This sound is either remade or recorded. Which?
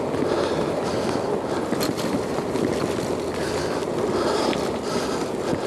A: recorded